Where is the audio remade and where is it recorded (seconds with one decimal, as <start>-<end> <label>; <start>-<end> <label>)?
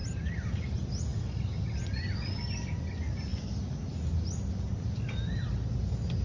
0.0-6.2 recorded